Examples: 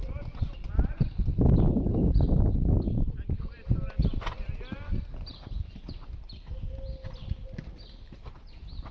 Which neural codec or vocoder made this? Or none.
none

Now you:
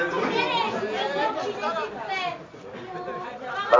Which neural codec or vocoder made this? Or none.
none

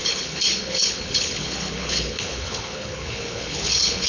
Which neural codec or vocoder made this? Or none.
codec, HILCodec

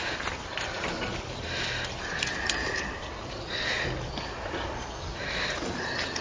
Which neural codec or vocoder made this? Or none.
none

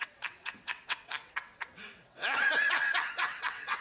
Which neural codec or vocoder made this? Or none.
vocoder, WaveNeXt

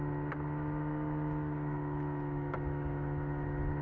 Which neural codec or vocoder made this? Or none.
none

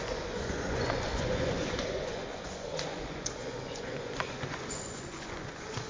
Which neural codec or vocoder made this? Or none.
vocoder, Vocos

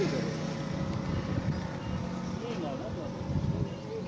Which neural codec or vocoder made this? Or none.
none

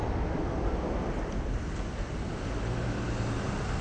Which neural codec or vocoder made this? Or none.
none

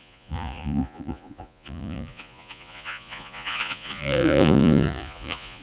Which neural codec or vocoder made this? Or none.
vocoder, Vocos